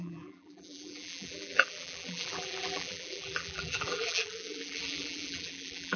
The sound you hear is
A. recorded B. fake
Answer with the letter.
B